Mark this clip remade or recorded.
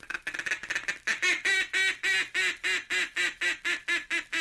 recorded